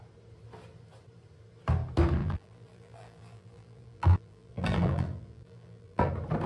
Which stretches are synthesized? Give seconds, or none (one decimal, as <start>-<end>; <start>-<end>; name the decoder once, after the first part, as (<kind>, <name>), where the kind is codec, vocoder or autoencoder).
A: 2.2-6.1 (vocoder, BigVGAN v2)